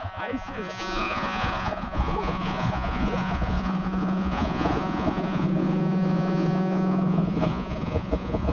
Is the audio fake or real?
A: fake